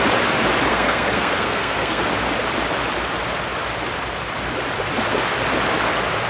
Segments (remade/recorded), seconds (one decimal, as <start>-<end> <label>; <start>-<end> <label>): 0.0-0.7 recorded; 0.7-2.0 remade; 2.0-6.3 recorded